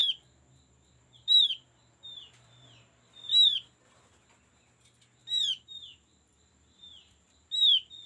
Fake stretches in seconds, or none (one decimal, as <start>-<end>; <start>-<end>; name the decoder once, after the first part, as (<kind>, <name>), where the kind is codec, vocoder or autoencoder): 0.0-3.1 (vocoder, BigVGAN v2); 5.2-7.5